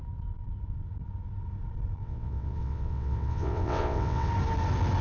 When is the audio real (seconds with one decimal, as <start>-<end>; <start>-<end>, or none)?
0.0-2.0; 4.3-5.0